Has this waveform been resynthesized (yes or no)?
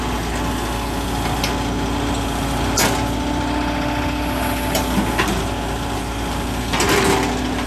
no